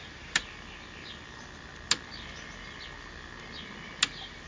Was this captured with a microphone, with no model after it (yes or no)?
yes